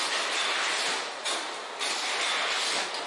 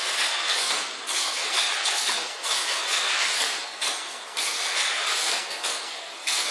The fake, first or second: second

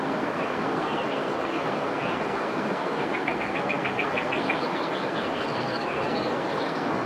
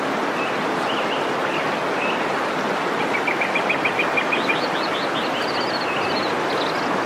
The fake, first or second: first